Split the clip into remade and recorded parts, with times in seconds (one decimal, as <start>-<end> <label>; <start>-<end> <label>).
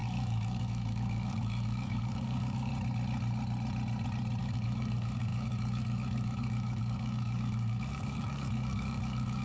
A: 0.0-2.7 remade; 2.7-4.4 recorded; 4.4-9.4 remade